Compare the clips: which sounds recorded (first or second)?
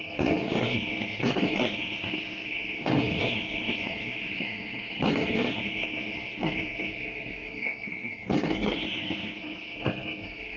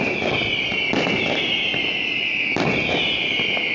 second